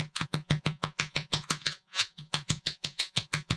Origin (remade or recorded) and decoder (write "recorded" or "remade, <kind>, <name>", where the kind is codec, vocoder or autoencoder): remade, vocoder, Vocos